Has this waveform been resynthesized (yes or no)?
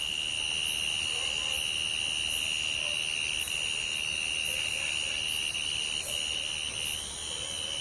no